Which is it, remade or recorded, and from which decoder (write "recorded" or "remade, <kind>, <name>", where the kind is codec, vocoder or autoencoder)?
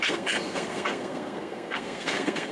remade, codec, SNAC